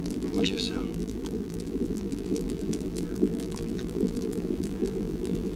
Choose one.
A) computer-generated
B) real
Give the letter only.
A